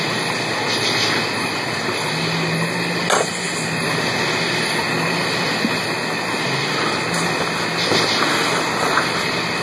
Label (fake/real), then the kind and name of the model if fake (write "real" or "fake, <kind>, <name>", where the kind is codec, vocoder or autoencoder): real